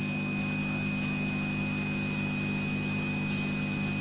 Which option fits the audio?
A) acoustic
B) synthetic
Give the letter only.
B